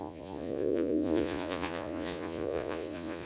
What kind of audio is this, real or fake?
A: fake